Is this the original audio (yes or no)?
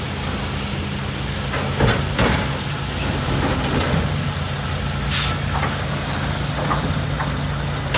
yes